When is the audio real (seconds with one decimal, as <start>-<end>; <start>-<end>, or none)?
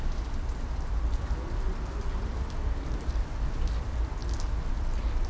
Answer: 4.2-4.7